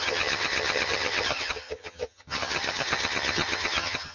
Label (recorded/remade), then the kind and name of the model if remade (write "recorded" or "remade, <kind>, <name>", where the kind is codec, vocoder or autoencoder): remade, vocoder, HiFi-GAN